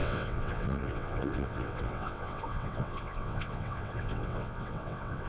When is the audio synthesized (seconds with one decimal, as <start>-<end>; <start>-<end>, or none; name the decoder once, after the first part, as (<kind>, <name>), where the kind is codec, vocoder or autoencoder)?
0.0-5.3 (vocoder, WaveNeXt)